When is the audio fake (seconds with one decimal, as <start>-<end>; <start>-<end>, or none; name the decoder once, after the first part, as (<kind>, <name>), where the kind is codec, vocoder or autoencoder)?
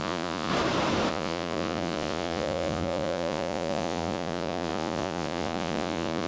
0.0-0.5 (vocoder, Vocos); 1.1-6.3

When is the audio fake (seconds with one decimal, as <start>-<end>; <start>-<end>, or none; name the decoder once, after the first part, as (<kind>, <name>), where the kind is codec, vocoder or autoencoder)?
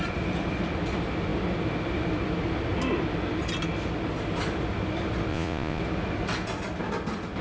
5.3-5.8 (vocoder, Vocos)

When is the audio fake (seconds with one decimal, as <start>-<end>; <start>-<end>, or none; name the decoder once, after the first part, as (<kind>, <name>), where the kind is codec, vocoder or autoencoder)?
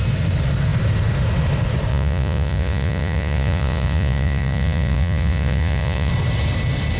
1.9-6.1 (vocoder, Vocos)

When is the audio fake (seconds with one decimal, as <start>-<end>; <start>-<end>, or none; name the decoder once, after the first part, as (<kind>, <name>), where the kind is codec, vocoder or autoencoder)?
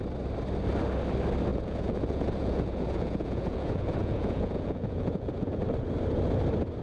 1.5-5.6 (vocoder, Vocos)